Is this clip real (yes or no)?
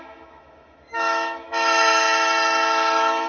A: no